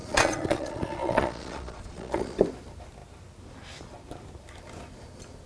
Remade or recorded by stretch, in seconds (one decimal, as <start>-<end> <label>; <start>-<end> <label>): 0.0-2.4 remade; 2.4-5.5 recorded